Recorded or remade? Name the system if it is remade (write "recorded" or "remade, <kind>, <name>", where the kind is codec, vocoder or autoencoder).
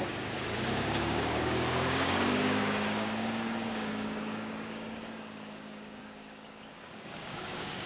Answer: remade, codec, DAC